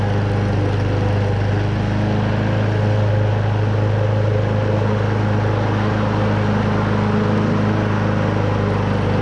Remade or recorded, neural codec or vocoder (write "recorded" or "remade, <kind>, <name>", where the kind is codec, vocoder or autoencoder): recorded